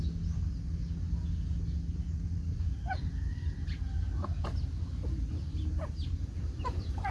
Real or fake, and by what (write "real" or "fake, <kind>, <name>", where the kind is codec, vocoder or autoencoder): real